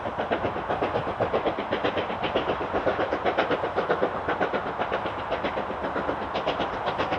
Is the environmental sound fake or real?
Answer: real